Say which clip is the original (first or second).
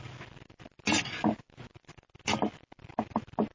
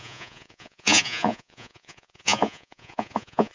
first